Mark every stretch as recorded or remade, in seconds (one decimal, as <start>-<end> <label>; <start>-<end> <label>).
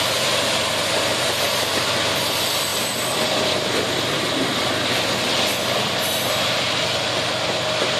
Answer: 0.0-8.0 recorded